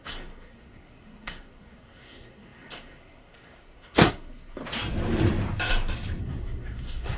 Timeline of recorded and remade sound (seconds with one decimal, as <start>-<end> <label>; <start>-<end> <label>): 0.0-4.6 remade; 4.6-6.2 recorded; 6.2-7.2 remade